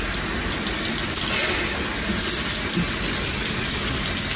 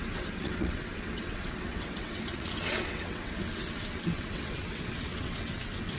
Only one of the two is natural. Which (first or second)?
first